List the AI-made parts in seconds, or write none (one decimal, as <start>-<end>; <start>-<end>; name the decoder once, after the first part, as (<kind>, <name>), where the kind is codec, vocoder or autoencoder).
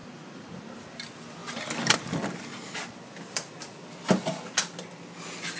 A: 0.0-0.6 (vocoder, Vocos)